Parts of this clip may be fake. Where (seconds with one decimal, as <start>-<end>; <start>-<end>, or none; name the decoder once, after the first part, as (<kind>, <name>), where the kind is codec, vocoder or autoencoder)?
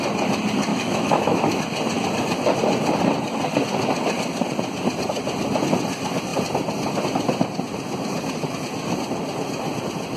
0.7-1.6 (autoencoder, DAC-VAE)